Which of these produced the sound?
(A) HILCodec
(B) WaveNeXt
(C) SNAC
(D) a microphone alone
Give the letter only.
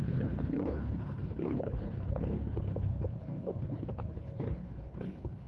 A